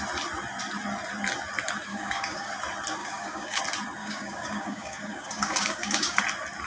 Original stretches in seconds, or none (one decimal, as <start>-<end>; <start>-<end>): 0.0-1.9; 2.5-3.0; 3.6-4.0; 6.2-6.7